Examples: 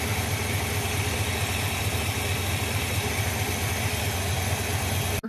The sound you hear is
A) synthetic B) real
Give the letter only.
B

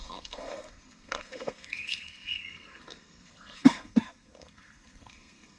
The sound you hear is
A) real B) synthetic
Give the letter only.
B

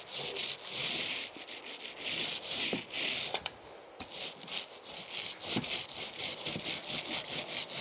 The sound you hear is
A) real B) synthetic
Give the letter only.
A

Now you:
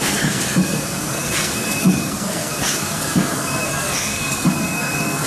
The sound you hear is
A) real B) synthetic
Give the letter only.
B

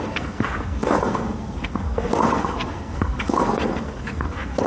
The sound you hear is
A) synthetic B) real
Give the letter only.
A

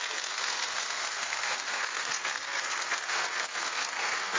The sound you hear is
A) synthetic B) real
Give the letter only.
A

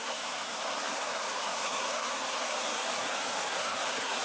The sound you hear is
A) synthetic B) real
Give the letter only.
A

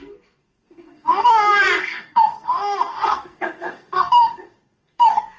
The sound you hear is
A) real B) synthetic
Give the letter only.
B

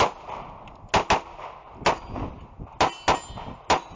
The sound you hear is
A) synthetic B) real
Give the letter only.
B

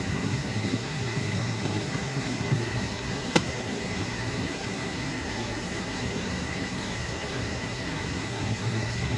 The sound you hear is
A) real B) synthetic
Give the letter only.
B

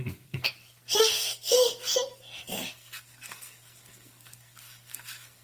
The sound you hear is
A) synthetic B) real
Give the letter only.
A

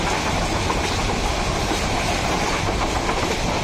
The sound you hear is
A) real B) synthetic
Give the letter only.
A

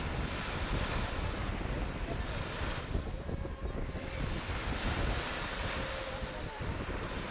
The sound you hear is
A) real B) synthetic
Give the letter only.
A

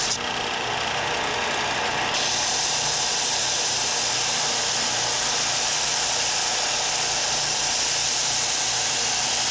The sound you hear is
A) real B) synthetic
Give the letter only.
A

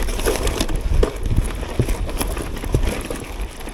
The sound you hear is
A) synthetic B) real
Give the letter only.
B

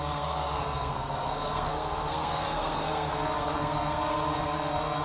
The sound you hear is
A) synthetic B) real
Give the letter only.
A